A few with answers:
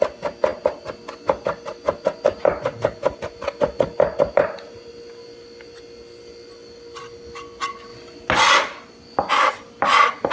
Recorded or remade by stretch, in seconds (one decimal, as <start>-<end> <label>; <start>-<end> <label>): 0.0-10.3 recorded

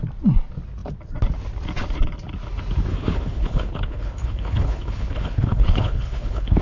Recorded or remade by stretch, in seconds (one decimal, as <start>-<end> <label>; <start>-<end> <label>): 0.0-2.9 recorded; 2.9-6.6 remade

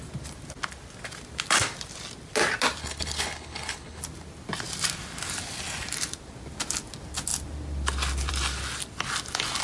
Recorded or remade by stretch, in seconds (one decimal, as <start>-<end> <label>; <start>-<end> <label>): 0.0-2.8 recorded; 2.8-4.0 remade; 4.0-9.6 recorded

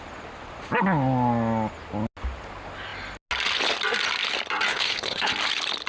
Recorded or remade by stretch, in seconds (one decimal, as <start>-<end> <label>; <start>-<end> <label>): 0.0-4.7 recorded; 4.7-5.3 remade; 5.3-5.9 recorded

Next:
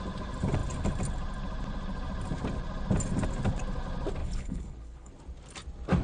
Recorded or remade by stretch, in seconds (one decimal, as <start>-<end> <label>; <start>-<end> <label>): 0.0-4.2 recorded; 4.2-5.1 remade; 5.1-6.0 recorded